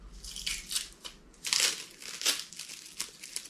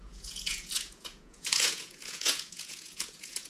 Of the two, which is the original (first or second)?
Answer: first